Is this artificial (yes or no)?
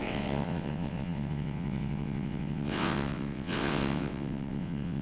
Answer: yes